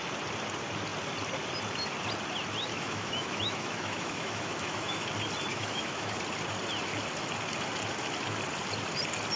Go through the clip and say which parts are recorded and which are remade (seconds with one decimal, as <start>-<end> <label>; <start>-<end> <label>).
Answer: 0.0-2.7 recorded; 2.7-5.1 remade; 5.1-5.5 recorded; 5.5-6.2 remade; 6.2-9.4 recorded